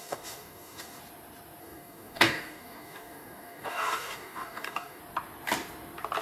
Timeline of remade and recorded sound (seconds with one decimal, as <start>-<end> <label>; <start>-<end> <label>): 0.0-1.0 remade; 1.0-1.6 recorded; 1.6-5.0 remade; 5.0-6.2 recorded